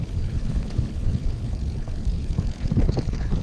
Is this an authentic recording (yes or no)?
no